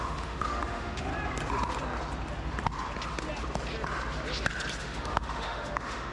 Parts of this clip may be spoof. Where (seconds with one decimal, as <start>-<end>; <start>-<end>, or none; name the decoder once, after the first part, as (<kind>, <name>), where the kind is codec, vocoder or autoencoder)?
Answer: 0.0-1.1 (autoencoder, DAC-VAE); 4.8-6.1